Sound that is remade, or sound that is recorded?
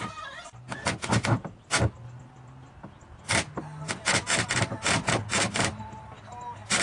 recorded